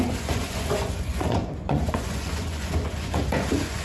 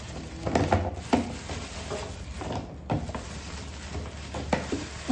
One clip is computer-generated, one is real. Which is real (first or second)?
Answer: second